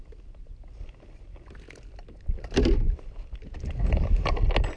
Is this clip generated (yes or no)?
no